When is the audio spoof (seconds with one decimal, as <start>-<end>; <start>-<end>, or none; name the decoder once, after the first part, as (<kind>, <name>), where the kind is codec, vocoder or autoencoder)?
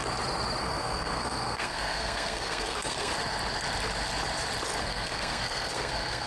0.6-3.1 (codec, SNAC); 4.8-6.3